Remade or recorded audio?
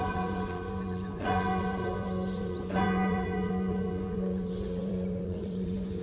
remade